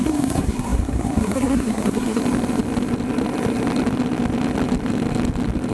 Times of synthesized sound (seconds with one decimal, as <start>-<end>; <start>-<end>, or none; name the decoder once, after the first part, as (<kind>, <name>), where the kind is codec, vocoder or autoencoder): 0.0-2.2 (codec, SNAC)